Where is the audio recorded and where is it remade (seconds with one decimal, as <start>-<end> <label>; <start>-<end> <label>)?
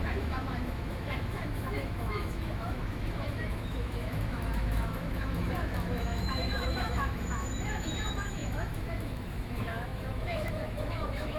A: 0.0-11.4 remade